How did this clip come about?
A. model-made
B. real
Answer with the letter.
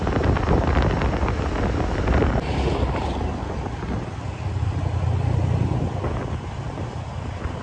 B